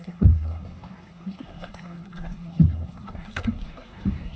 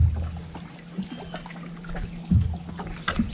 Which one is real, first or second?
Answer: second